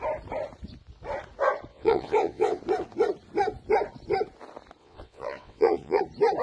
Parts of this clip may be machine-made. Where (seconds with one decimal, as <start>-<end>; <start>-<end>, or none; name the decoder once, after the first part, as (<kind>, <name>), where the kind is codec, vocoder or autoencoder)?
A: 1.7-2.6 (vocoder, WaveNeXt); 4.8-6.0